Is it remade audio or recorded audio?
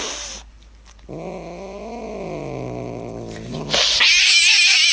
recorded